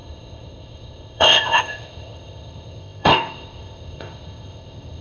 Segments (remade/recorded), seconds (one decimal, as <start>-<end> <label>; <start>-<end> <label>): 0.0-5.0 remade